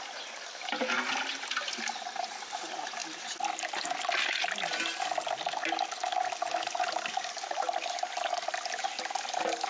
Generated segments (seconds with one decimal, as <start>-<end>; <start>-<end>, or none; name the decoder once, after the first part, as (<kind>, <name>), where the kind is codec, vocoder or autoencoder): none